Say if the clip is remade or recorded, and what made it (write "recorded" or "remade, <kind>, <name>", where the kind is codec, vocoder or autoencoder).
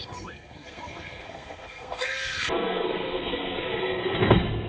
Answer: remade, codec, SNAC